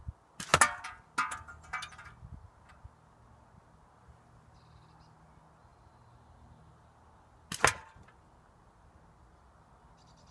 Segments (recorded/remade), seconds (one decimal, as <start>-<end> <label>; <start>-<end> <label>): 0.0-10.3 recorded